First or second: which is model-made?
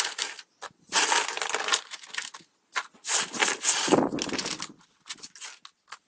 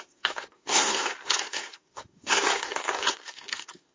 second